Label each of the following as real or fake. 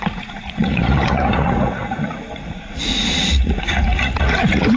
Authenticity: fake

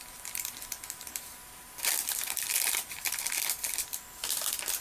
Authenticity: fake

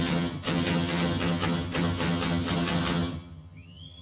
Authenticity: fake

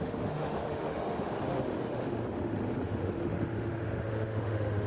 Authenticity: fake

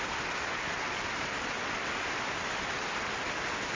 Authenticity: real